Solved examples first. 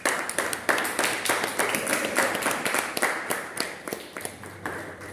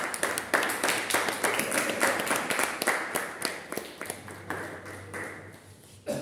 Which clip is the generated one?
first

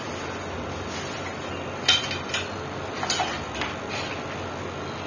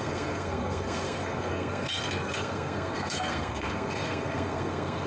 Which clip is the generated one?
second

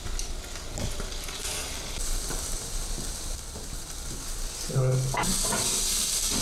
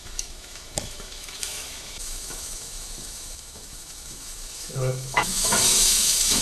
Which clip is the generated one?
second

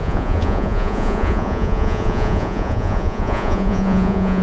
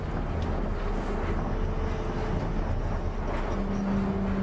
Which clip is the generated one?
first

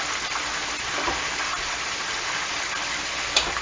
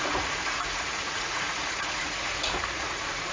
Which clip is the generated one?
second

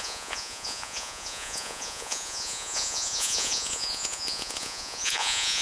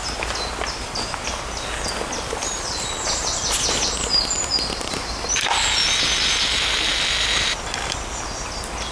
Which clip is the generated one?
first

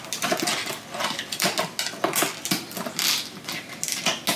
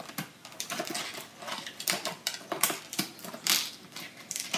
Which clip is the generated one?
second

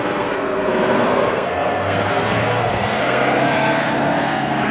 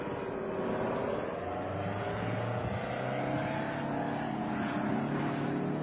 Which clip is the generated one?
first